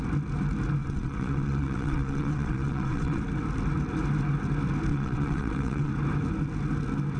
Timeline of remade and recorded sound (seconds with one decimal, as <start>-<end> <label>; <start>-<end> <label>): 0.0-0.8 recorded; 0.8-3.2 remade; 3.2-4.9 recorded; 4.9-5.9 remade; 5.9-7.2 recorded